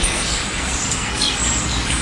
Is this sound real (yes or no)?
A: no